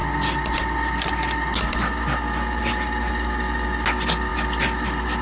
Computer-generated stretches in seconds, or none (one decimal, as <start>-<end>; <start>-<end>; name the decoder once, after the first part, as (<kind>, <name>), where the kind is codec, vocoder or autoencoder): none